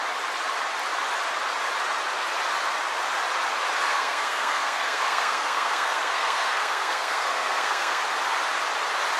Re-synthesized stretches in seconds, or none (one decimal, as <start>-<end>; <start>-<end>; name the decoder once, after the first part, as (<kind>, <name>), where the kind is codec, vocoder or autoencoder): 3.9-8.0 (codec, SNAC)